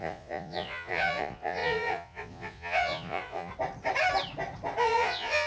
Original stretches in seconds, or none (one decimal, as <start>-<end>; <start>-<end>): 3.5-4.8